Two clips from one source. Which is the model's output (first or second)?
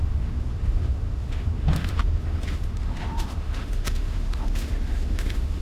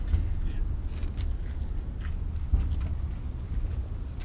first